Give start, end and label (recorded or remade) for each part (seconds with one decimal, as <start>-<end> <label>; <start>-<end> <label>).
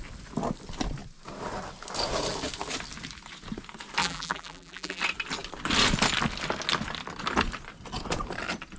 0.0-4.0 recorded; 4.0-5.0 remade; 5.0-8.8 recorded